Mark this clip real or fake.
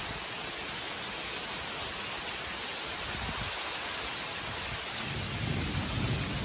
real